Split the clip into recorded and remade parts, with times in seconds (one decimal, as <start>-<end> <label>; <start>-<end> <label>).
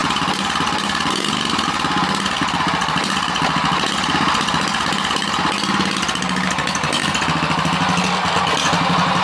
0.0-1.1 remade; 1.1-9.2 recorded